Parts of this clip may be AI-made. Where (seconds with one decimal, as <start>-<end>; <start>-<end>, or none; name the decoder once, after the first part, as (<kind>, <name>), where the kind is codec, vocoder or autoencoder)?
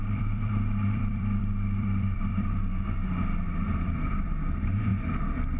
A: 0.0-5.6 (vocoder, BigVGAN v2)